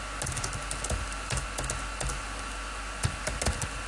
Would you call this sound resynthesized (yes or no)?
no